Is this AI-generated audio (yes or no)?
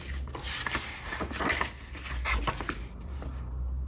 no